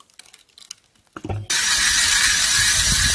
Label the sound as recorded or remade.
recorded